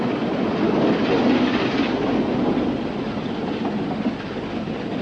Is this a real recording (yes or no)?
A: yes